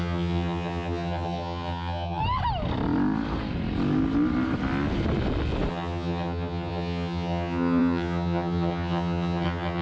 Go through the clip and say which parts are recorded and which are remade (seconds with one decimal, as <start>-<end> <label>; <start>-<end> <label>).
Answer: 0.0-2.2 remade; 2.2-5.7 recorded; 5.7-9.8 remade